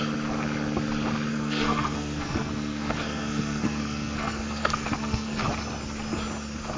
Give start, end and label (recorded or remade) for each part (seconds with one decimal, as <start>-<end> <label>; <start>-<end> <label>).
0.0-1.3 recorded; 1.3-5.4 remade; 5.4-6.8 recorded